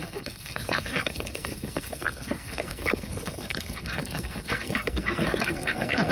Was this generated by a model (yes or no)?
yes